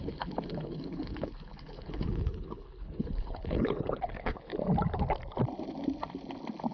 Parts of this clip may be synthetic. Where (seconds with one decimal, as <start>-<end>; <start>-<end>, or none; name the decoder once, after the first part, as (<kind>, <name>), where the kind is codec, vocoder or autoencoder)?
0.0-4.5 (codec, HILCodec)